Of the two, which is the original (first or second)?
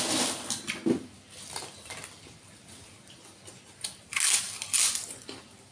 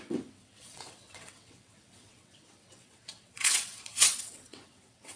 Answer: first